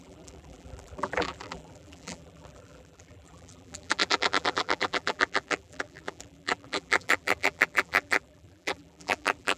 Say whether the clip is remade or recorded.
remade